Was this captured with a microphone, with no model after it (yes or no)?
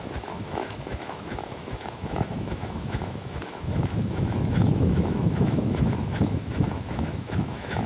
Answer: no